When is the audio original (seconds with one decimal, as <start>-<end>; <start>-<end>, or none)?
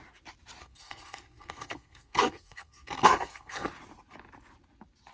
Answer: 0.0-0.6; 3.7-5.1